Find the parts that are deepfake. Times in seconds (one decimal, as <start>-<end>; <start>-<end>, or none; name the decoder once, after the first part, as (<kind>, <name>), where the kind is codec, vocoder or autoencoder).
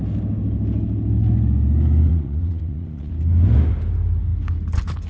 2.1-3.1 (vocoder, WaveNeXt)